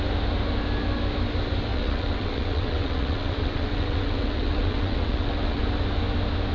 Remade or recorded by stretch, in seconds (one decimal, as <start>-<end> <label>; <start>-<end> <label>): 0.0-1.7 recorded; 1.7-5.6 remade; 5.6-6.5 recorded